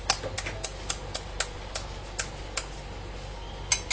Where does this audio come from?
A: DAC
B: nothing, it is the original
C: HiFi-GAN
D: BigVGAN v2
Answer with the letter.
B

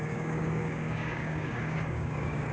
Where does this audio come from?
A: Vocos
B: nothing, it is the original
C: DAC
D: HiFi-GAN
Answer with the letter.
C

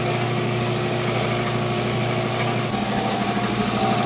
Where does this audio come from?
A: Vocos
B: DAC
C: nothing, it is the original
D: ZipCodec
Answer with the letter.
C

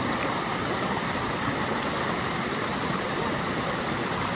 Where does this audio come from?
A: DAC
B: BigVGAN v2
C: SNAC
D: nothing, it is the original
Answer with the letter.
D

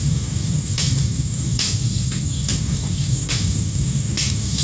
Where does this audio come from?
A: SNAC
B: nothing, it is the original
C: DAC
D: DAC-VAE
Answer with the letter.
C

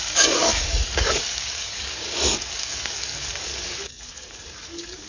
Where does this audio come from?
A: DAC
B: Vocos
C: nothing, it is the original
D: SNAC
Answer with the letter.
A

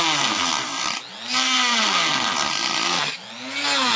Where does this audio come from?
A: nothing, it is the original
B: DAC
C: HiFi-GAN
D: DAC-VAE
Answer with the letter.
A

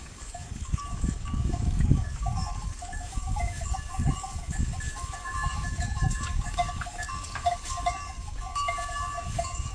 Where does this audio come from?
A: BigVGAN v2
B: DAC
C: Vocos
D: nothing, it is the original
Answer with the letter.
B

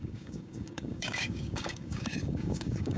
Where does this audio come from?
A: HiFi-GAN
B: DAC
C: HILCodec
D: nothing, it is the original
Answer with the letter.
B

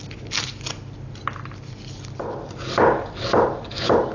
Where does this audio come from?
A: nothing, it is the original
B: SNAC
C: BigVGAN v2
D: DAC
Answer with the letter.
A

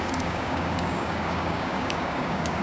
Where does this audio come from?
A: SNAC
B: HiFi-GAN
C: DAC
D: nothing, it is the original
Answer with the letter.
C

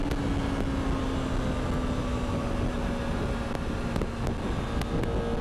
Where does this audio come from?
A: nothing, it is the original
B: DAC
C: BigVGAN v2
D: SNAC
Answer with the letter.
A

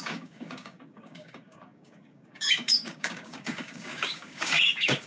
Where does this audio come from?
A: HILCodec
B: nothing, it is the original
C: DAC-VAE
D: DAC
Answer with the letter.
D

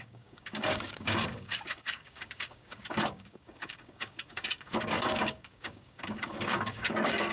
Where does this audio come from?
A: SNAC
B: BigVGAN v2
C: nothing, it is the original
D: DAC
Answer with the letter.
D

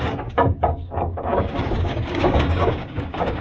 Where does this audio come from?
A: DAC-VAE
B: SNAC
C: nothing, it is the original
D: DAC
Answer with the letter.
D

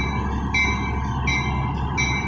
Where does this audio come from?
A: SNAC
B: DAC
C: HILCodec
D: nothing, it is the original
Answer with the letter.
D